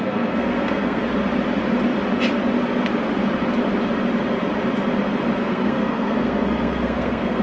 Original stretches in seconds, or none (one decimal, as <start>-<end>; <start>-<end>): 1.0-5.4